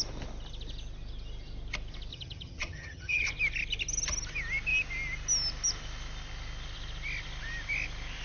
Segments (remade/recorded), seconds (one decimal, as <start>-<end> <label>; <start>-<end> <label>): 0.0-2.1 recorded; 2.1-3.3 remade; 3.3-8.2 recorded